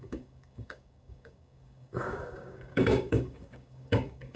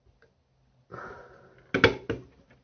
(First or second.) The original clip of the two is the second